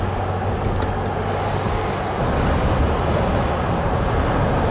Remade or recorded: recorded